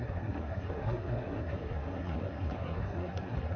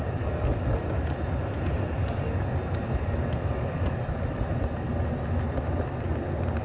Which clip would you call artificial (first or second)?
first